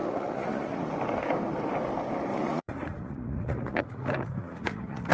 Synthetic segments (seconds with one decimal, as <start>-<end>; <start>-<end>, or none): 0.0-0.9; 2.3-5.1